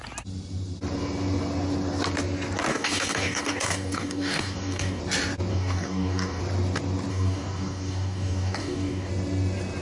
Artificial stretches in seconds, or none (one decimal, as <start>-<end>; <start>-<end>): 2.7-5.0; 5.5-6.4; 7.1-9.1